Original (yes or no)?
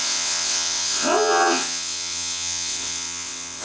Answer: no